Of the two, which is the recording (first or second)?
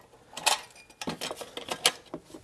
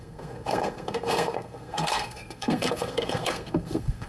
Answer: first